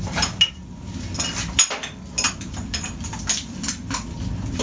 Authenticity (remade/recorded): recorded